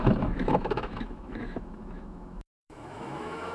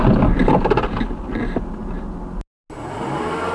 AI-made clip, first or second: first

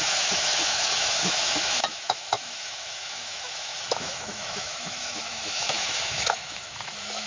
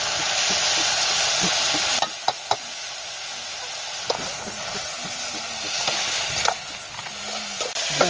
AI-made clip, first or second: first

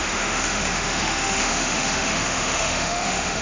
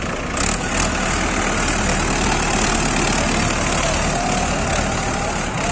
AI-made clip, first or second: first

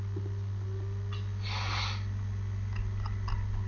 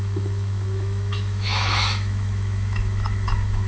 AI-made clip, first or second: second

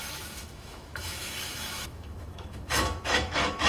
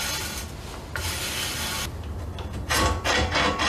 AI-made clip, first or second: first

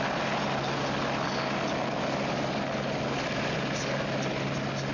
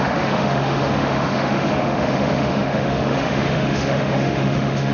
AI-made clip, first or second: second